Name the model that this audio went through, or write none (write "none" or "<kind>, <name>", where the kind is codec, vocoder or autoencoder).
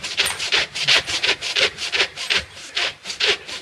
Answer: vocoder, BigVGAN v2